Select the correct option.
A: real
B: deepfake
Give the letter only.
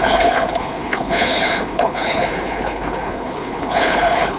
B